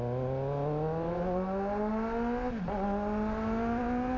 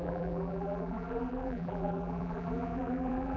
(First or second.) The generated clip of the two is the second